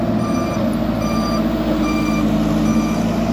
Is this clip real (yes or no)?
yes